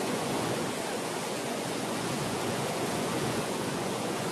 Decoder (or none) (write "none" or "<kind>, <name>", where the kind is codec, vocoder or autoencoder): vocoder, Vocos